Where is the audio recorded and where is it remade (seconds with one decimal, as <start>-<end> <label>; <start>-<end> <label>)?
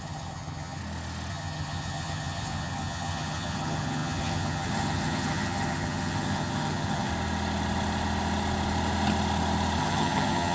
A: 0.0-0.8 remade; 0.8-1.3 recorded; 1.3-7.1 remade; 7.1-9.8 recorded; 9.8-10.5 remade